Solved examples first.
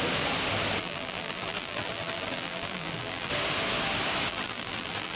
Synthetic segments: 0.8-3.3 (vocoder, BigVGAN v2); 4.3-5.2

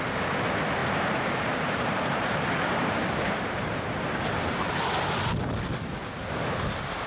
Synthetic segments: 0.8-4.8 (vocoder, BigVGAN v2); 6.0-6.6